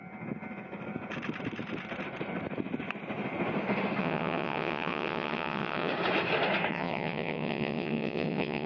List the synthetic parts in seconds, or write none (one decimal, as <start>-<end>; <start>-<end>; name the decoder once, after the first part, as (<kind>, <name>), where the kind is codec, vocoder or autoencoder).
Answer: 4.0-5.9 (vocoder, WaveNeXt); 6.7-8.7